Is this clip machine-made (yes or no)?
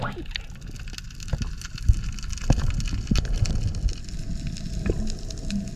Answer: no